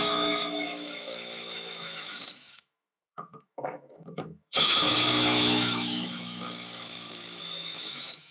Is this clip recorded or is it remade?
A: remade